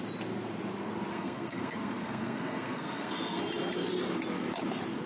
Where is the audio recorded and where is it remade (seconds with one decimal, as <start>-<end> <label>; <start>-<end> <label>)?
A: 0.0-1.1 recorded; 1.1-3.4 remade; 3.4-5.1 recorded